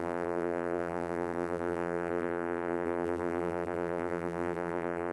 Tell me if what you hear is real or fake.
fake